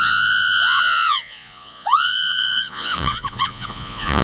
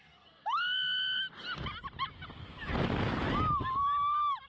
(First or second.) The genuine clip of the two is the second